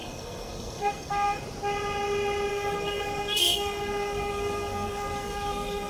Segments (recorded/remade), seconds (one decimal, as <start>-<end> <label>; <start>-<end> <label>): 0.0-1.4 remade; 1.4-2.5 recorded; 2.5-5.9 remade